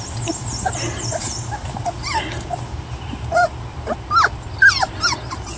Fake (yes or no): no